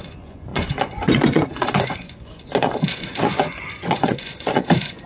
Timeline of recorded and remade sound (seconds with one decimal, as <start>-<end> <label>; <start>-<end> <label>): 0.0-5.1 remade